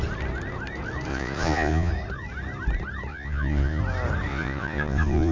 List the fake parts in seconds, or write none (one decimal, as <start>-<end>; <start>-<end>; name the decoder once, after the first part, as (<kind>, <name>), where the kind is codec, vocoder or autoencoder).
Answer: 1.1-1.9 (vocoder, Vocos); 3.1-3.8; 4.3-5.3